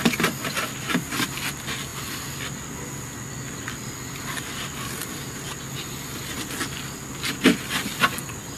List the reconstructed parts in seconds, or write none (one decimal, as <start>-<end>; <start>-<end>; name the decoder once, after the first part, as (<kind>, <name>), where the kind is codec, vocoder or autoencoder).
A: none